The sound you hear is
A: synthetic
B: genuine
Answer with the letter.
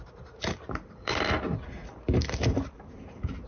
A